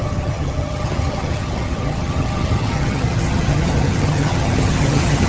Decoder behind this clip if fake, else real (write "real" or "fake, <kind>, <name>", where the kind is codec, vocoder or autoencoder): fake, vocoder, HiFi-GAN